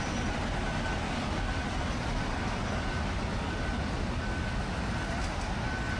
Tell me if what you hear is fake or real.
real